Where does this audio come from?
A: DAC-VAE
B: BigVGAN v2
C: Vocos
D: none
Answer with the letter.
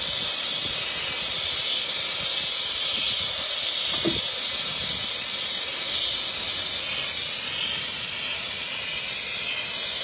D